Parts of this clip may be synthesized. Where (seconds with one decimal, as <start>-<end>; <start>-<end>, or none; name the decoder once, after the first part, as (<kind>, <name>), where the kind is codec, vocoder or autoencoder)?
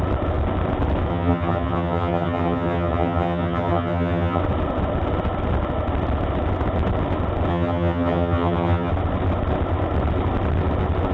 1.1-4.4 (vocoder, HiFi-GAN); 7.5-8.9